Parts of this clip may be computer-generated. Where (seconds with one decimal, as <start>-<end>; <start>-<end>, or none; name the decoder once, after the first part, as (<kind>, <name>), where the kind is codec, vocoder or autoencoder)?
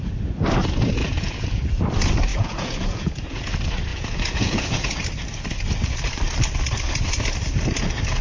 1.0-1.7 (vocoder, Vocos); 2.3-3.5; 3.9-5.0